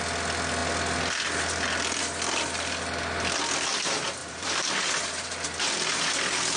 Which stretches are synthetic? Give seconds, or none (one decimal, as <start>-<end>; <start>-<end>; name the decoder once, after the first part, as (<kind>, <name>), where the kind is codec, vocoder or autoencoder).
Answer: 4.2-5.0 (vocoder, BigVGAN v2)